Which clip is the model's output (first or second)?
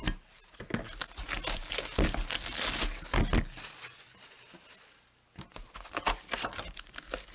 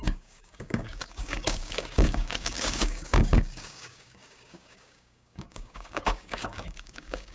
second